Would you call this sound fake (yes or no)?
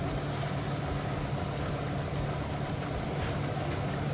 no